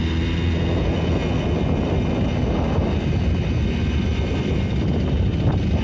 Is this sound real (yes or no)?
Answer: yes